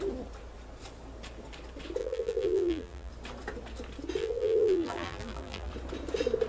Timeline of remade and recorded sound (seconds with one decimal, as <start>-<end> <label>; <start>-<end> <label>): 0.0-2.0 recorded; 2.0-3.1 remade; 3.1-4.2 recorded; 4.2-5.7 remade; 5.7-6.5 recorded